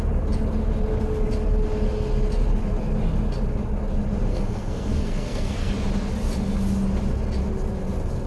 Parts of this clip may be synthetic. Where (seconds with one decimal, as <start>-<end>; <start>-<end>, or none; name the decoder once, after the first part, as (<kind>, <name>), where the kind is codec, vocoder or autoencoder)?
4.3-5.7 (codec, SNAC)